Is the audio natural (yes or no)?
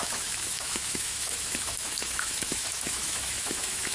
no